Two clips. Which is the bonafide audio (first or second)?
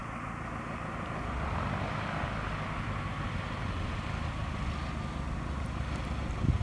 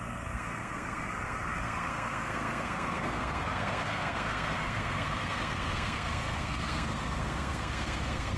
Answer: first